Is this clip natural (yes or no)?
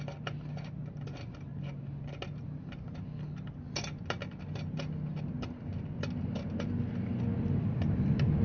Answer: yes